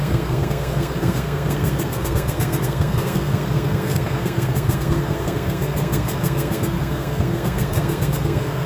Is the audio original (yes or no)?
no